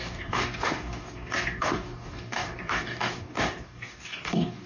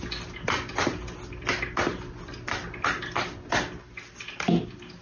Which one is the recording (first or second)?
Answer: second